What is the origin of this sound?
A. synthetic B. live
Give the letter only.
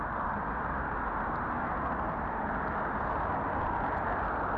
B